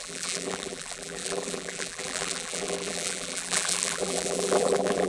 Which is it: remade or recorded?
remade